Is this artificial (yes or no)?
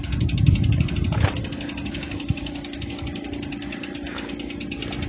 no